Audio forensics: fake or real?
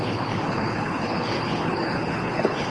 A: fake